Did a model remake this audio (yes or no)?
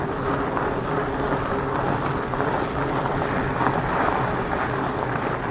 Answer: no